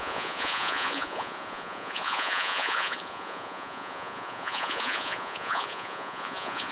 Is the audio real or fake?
fake